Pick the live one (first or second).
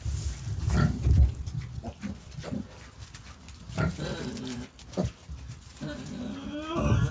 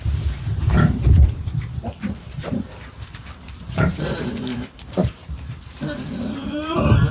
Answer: first